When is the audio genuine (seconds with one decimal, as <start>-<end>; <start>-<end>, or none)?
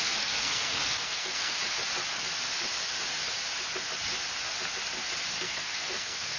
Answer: 1.6-5.4